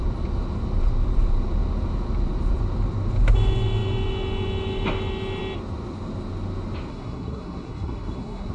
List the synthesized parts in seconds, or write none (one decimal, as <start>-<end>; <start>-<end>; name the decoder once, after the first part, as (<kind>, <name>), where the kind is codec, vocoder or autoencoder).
6.9-8.5 (codec, SNAC)